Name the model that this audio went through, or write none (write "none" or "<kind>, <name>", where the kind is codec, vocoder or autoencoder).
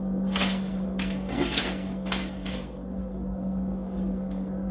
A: codec, SNAC